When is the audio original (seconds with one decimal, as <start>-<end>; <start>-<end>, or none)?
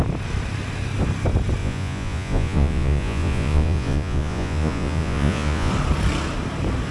0.0-1.6; 5.7-6.9